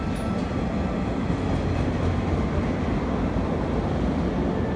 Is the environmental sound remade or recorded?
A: recorded